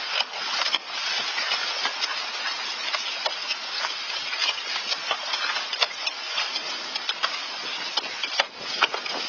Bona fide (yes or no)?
yes